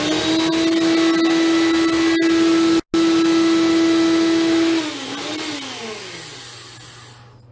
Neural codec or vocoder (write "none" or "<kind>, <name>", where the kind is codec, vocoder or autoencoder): none